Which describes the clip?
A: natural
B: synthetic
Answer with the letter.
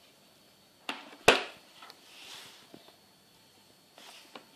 A